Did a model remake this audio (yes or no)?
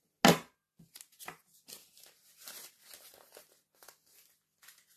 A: no